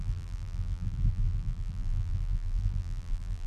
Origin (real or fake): fake